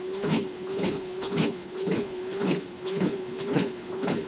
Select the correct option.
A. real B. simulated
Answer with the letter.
B